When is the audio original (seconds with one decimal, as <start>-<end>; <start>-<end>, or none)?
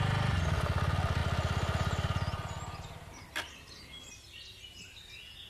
0.0-5.5